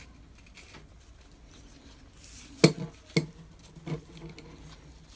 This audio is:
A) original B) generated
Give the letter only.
A